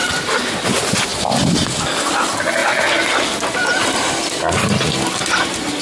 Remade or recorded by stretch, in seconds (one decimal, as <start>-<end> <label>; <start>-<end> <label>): 0.0-5.8 recorded